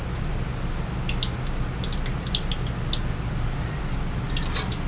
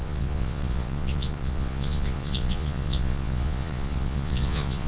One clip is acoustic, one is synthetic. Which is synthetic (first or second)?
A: second